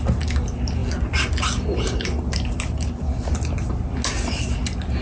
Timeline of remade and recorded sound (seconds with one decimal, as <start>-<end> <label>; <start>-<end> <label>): 0.0-5.0 recorded